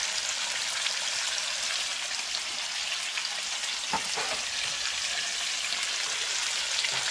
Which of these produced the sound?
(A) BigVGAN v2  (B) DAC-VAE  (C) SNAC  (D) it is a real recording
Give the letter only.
D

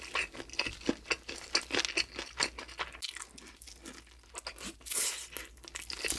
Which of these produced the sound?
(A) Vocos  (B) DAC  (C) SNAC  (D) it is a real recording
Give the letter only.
D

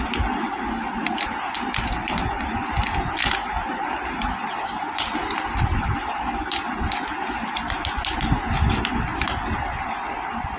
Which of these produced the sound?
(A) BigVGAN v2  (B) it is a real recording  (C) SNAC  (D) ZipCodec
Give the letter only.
B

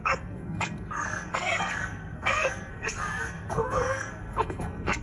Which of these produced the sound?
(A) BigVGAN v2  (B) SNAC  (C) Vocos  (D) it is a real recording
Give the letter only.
B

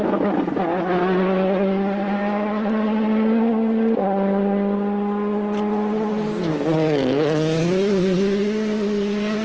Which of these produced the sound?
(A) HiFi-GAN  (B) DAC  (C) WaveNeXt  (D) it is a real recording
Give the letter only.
D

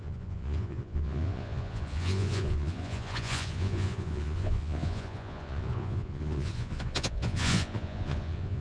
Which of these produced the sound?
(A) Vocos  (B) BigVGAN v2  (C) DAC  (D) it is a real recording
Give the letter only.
A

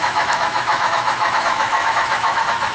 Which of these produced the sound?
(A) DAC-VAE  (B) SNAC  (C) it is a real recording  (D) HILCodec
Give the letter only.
A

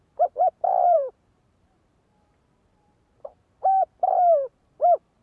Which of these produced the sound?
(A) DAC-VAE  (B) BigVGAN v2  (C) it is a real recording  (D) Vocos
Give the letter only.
B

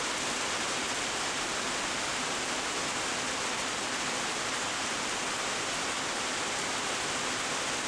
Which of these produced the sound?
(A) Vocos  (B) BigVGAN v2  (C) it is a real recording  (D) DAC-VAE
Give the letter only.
C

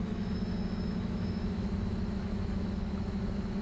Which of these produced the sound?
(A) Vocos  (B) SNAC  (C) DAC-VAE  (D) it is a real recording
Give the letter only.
C